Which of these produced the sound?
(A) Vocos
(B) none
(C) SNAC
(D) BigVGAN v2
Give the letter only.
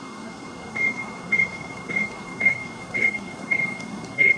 C